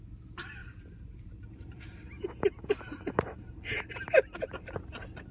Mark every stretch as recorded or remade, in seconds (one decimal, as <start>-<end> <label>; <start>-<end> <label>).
0.0-0.6 recorded; 0.6-3.8 remade; 3.8-5.3 recorded

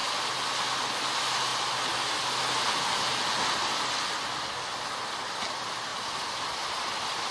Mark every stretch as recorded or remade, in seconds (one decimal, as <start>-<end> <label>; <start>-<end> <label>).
0.0-7.3 recorded

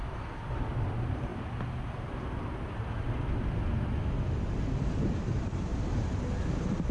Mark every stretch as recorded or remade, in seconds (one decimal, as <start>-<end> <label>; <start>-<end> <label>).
0.0-1.3 remade; 1.3-4.4 recorded; 4.4-5.7 remade; 5.7-6.5 recorded; 6.5-6.9 remade

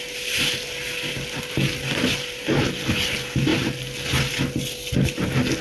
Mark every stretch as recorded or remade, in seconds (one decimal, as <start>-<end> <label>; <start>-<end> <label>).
0.0-5.6 recorded

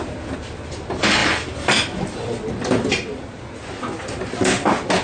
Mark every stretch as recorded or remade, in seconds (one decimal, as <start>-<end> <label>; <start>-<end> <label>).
0.0-1.2 recorded; 1.2-3.4 remade; 3.4-5.0 recorded

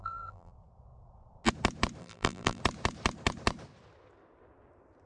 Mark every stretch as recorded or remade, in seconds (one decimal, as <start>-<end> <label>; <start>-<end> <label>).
0.0-0.5 remade; 0.5-2.0 recorded; 2.0-2.6 remade; 2.6-5.1 recorded

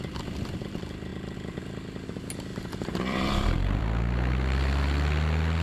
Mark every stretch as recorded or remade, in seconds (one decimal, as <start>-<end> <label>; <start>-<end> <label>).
0.0-2.5 recorded; 2.5-3.8 remade; 3.8-5.6 recorded